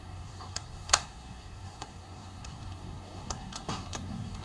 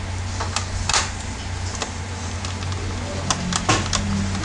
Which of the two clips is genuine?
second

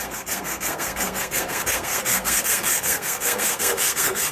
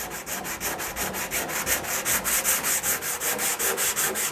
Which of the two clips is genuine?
second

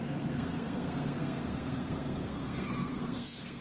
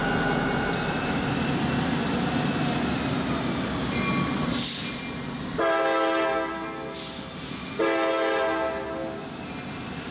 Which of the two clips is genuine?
second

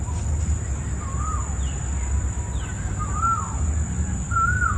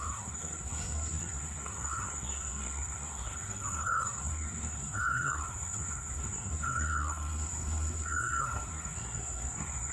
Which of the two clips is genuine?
first